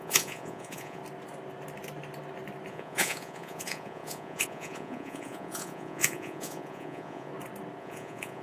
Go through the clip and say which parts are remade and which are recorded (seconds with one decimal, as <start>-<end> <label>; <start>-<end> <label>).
0.0-1.0 remade; 1.0-2.7 recorded; 2.7-7.3 remade; 7.3-7.8 recorded; 7.8-8.4 remade